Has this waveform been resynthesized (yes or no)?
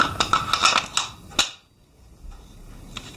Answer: no